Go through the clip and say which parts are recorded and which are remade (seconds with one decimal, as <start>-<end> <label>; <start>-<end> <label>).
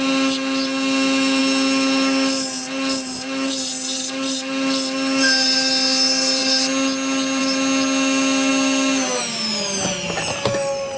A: 0.0-11.0 recorded